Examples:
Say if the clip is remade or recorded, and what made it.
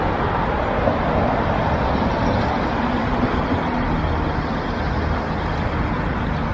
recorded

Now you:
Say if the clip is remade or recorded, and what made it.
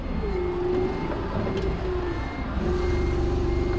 recorded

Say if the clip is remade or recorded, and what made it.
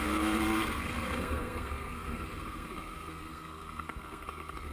remade, codec, SNAC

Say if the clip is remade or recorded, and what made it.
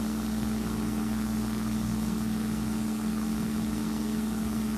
remade, codec, SNAC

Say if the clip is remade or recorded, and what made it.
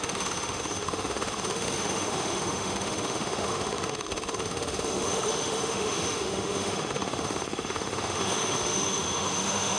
remade, autoencoder, DAC-VAE